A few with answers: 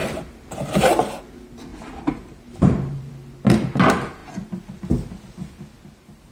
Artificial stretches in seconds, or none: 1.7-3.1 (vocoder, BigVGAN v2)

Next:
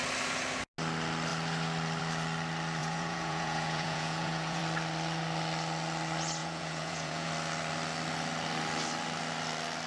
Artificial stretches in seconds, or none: 2.8-4.6 (vocoder, Vocos); 6.4-7.3

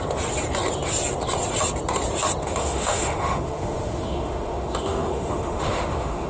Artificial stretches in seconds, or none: 2.4-6.3 (autoencoder, DAC-VAE)

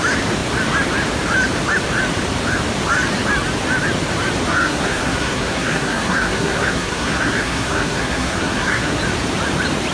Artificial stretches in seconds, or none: 4.5-9.0 (codec, SNAC)

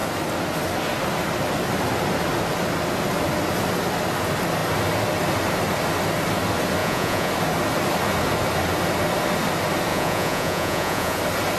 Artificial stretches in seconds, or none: 6.8-7.3 (vocoder, Vocos); 9.9-11.2

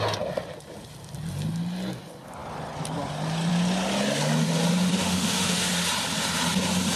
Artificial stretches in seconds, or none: 4.9-5.7 (autoencoder, DAC-VAE)

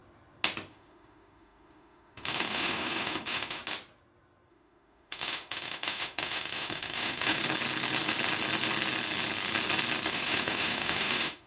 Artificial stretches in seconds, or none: 0.7-3.6 (autoencoder, DAC-VAE); 4.5-7.4; 10.1-11.5